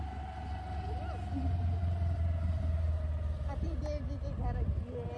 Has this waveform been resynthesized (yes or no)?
no